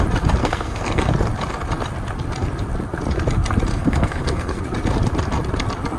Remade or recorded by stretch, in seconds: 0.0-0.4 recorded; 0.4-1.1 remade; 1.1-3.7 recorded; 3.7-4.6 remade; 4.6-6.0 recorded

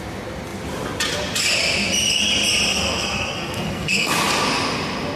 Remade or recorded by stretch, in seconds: 0.0-2.7 recorded; 2.7-4.1 remade; 4.1-5.2 recorded

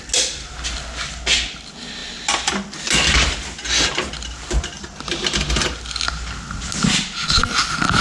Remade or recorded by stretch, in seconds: 0.0-8.0 recorded